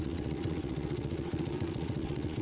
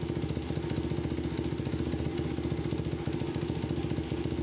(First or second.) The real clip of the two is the second